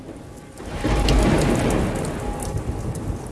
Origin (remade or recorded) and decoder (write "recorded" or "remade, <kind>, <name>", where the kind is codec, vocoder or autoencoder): recorded